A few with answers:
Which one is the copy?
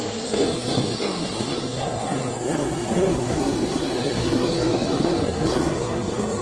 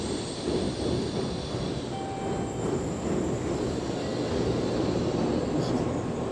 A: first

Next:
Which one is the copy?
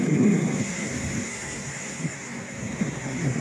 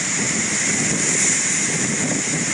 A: first